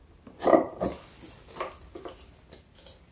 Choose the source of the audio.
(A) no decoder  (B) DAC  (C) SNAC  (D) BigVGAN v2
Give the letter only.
A